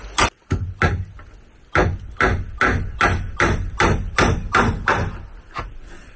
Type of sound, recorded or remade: recorded